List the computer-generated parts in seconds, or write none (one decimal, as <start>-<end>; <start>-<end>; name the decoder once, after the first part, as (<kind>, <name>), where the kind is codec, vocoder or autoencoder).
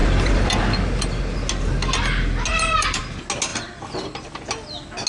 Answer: 0.0-0.6 (vocoder, BigVGAN v2); 2.5-3.0; 3.5-4.5